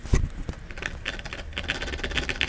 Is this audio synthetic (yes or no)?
no